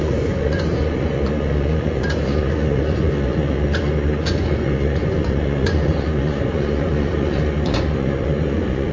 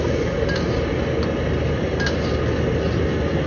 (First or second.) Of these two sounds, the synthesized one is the first